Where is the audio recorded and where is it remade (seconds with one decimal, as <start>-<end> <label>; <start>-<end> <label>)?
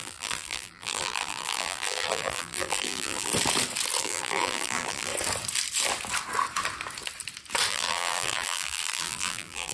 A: 0.0-3.3 remade; 3.3-4.0 recorded; 4.0-5.1 remade; 5.1-7.7 recorded; 7.7-9.7 remade